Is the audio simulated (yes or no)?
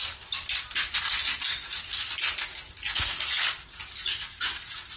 no